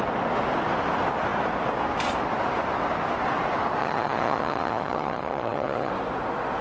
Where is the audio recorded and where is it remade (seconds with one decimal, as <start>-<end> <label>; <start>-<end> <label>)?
0.0-3.8 recorded; 3.8-5.9 remade; 5.9-6.6 recorded